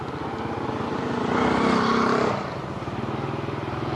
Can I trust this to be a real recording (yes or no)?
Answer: yes